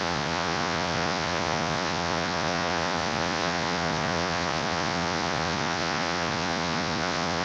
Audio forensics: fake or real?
fake